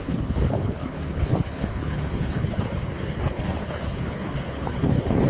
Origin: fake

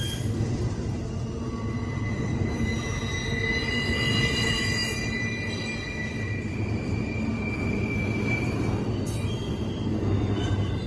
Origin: real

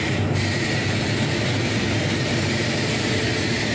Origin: real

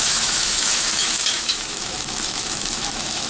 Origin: fake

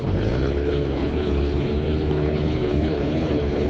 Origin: fake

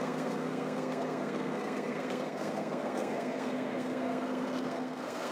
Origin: fake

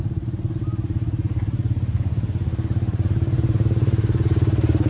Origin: fake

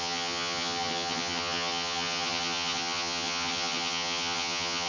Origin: fake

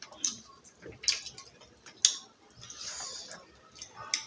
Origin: real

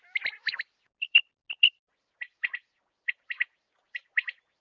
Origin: real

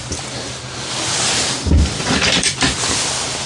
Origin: fake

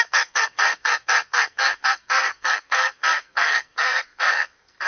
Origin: fake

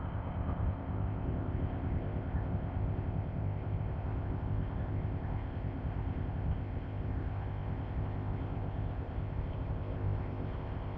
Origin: fake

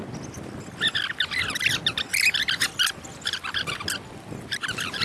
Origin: real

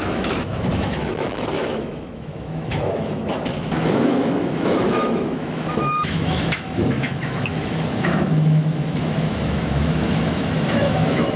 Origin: fake